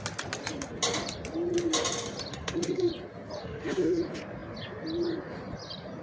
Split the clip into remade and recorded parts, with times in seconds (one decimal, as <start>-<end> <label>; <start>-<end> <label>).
0.0-2.3 recorded; 2.3-2.9 remade; 2.9-3.4 recorded; 3.4-4.0 remade; 4.0-6.0 recorded